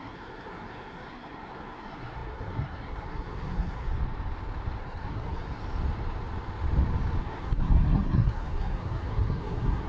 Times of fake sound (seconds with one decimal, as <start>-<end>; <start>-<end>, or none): 0.0-3.9; 4.8-5.6; 7.2-9.9